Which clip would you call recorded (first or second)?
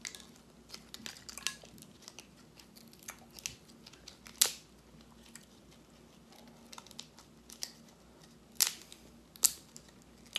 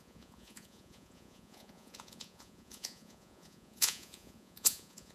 first